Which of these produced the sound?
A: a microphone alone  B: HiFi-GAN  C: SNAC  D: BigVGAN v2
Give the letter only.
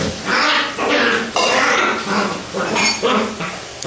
D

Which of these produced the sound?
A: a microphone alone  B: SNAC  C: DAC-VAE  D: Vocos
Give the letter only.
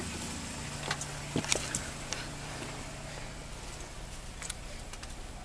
A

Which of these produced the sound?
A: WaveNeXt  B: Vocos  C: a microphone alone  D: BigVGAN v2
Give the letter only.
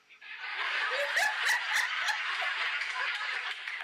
D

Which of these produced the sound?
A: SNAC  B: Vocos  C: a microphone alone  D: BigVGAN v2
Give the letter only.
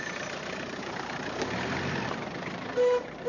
D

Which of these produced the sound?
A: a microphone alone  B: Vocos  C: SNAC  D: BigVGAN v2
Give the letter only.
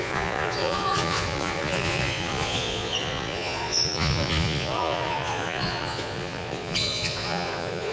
B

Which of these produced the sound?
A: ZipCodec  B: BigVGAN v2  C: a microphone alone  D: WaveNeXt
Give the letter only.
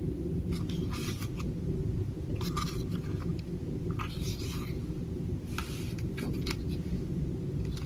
C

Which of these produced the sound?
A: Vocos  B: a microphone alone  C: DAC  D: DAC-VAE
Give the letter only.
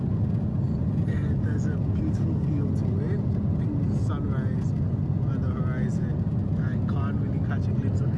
B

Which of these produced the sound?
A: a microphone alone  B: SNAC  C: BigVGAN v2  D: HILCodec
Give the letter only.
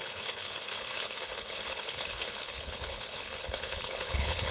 D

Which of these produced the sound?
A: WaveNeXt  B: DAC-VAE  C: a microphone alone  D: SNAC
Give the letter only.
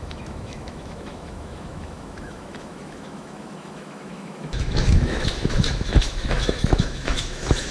B